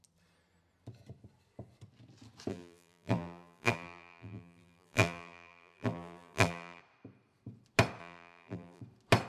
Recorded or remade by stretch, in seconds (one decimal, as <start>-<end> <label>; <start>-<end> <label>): 0.0-2.5 recorded; 2.5-6.8 remade; 6.8-8.0 recorded; 8.0-8.8 remade; 8.8-9.3 recorded